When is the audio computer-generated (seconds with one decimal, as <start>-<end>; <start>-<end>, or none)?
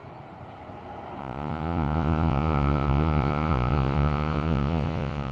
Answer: 1.2-5.3